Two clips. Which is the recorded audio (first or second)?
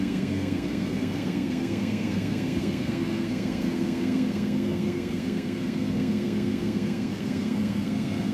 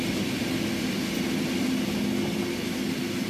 second